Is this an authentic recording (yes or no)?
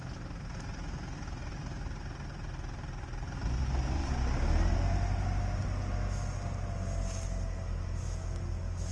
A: yes